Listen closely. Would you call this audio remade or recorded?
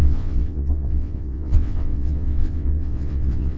remade